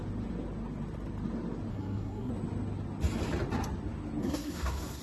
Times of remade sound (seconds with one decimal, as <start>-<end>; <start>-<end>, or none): 1.7-2.3; 4.2-5.0